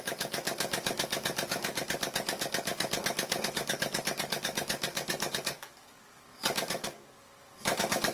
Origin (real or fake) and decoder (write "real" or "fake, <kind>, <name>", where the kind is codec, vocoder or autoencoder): fake, codec, DAC